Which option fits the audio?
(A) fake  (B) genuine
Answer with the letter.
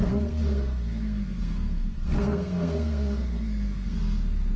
A